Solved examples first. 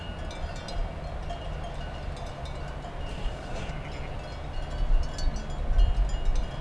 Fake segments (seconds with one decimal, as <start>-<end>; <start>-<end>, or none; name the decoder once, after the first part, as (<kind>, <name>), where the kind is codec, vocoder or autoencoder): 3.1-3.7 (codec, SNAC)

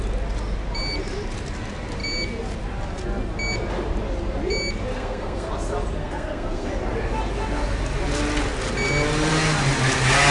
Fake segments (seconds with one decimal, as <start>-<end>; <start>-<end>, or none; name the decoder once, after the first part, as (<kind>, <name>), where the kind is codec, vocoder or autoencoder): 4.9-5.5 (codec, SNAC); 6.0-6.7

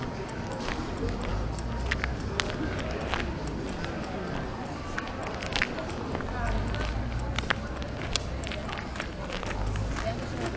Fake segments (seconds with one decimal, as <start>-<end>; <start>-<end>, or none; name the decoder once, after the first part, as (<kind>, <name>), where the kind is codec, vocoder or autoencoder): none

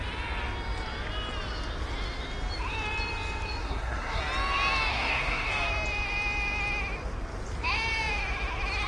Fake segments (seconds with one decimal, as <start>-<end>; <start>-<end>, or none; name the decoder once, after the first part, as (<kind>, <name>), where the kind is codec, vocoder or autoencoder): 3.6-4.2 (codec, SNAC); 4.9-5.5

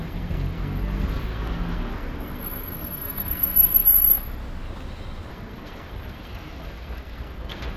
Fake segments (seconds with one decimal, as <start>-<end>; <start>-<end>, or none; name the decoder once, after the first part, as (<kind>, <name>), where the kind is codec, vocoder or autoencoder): 0.0-4.4 (codec, SNAC); 5.3-7.8

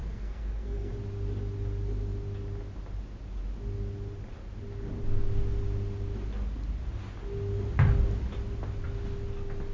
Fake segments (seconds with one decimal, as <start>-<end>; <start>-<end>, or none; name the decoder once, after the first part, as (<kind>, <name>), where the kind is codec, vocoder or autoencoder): 0.0-0.9 (codec, SNAC)

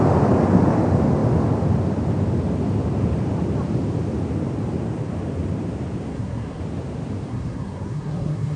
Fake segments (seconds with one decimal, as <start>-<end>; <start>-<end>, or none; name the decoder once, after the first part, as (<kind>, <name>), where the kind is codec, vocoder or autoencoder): 6.1-6.6 (codec, SNAC); 7.3-8.6

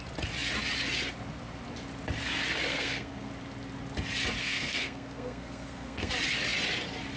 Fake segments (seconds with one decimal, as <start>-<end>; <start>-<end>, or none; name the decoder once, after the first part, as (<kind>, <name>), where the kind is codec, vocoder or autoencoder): 2.7-3.3 (codec, SNAC); 4.4-6.1